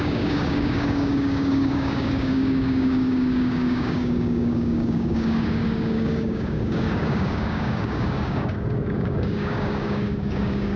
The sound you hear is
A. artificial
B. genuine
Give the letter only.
A